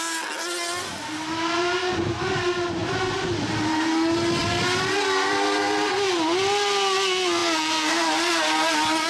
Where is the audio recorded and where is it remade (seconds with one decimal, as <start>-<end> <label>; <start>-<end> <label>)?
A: 0.0-9.1 recorded